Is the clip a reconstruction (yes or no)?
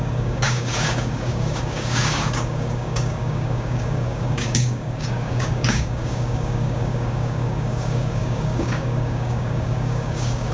yes